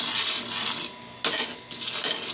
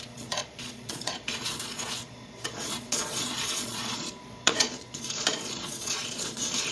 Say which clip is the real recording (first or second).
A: first